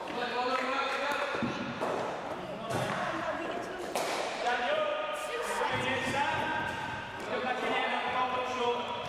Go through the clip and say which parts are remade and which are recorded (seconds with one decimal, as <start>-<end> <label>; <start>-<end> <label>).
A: 0.0-4.9 remade; 4.9-5.6 recorded; 5.6-9.1 remade

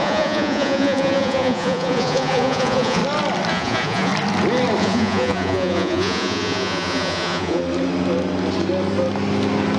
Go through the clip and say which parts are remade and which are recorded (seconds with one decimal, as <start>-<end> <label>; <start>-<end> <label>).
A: 0.0-3.0 remade; 3.0-3.5 recorded; 3.5-4.1 remade; 4.1-4.8 recorded; 4.8-7.6 remade; 7.6-9.8 recorded